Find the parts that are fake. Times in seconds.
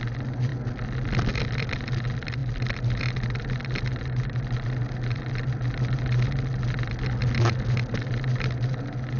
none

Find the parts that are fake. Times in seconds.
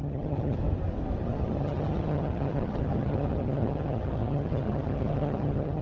0.0-0.6 (vocoder, HiFi-GAN); 1.2-5.8